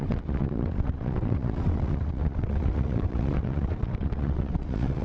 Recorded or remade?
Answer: remade